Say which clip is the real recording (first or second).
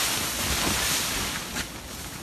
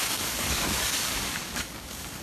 first